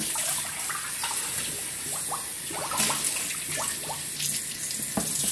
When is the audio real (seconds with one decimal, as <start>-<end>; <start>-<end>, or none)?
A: 0.0-5.3